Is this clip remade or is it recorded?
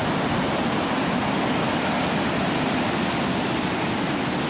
recorded